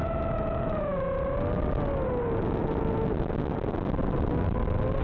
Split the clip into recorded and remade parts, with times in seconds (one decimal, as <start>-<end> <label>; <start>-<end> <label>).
0.0-0.8 remade; 0.8-5.0 recorded